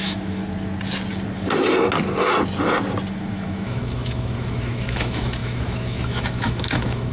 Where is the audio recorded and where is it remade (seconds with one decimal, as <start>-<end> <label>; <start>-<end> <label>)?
0.0-0.4 remade; 0.4-3.1 recorded; 3.1-7.1 remade